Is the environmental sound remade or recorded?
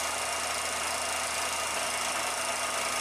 recorded